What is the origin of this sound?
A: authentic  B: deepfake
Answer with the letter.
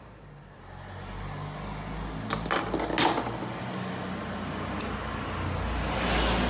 A